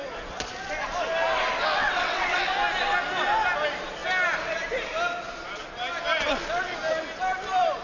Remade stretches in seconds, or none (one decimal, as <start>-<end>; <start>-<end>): 1.8-2.4